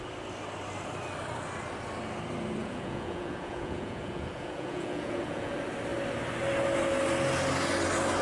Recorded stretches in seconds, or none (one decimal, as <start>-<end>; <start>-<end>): 0.0-2.6; 5.5-8.2

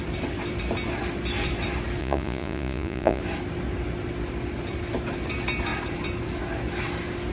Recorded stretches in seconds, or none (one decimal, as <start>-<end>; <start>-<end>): 0.0-2.0; 3.2-7.3